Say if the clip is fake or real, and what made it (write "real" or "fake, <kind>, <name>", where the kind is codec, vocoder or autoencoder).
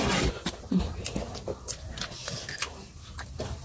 real